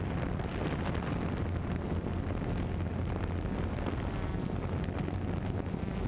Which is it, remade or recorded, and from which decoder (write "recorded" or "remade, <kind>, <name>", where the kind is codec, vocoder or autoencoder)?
recorded